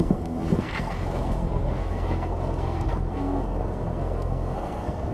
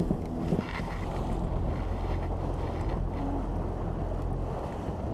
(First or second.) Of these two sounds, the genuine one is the second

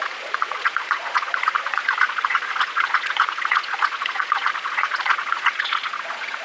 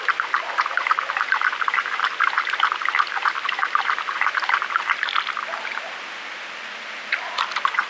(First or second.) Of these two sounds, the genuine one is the second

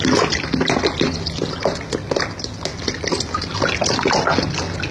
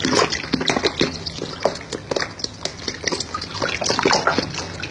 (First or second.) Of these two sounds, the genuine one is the second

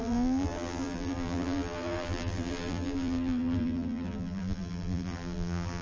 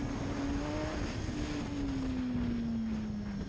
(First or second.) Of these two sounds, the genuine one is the second